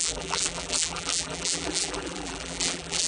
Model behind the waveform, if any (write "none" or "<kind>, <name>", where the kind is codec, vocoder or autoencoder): vocoder, BigVGAN v2